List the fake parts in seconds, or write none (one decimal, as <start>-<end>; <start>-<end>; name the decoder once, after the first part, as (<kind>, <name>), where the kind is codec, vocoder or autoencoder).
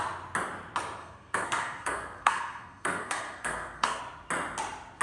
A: 1.0-4.0 (codec, SNAC)